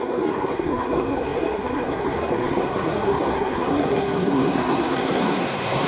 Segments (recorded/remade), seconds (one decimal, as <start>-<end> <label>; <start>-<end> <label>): 0.0-5.9 remade